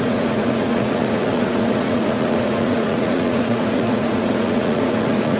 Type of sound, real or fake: fake